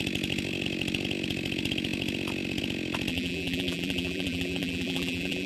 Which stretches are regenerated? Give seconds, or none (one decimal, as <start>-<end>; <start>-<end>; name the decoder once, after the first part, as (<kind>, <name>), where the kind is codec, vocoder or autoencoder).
3.1-5.5 (vocoder, BigVGAN v2)